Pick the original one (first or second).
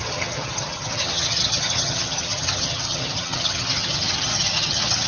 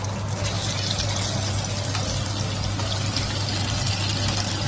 second